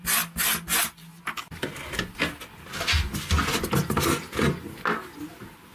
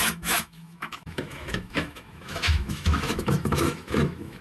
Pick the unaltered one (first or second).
first